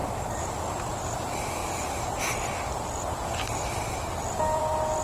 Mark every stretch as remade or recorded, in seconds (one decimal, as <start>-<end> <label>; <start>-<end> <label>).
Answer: 0.0-1.6 recorded; 1.6-4.6 remade; 4.6-5.0 recorded